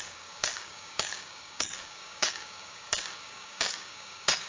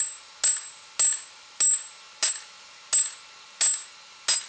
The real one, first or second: second